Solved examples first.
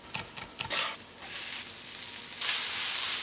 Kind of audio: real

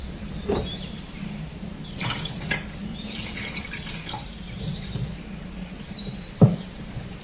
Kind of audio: fake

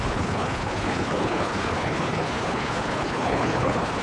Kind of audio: fake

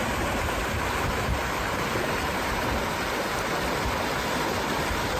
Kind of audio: real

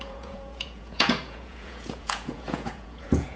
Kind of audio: fake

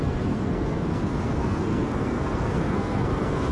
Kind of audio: fake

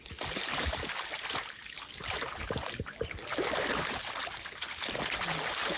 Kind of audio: real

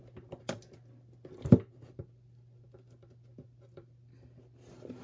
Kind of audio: real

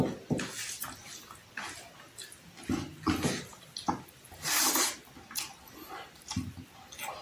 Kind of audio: real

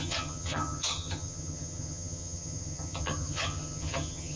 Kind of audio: fake